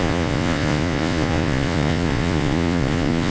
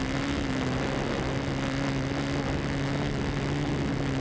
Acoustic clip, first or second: second